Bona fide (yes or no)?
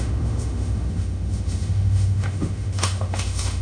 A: no